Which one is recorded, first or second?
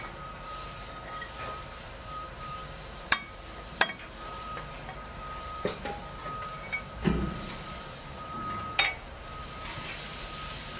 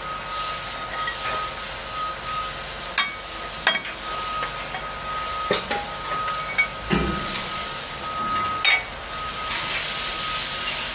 second